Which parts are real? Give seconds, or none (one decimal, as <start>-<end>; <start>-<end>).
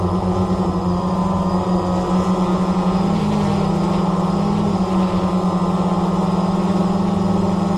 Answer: 0.0-2.5; 3.2-7.8